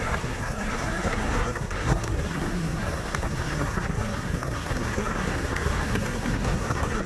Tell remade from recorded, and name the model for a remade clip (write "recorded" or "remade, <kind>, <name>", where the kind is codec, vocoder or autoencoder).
remade, codec, SNAC